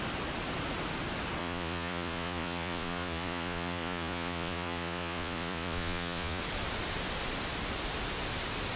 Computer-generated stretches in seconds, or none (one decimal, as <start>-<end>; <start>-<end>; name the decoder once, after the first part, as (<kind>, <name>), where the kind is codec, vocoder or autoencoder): 1.4-6.4 (vocoder, Vocos)